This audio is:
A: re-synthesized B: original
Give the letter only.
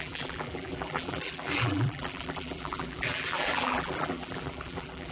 A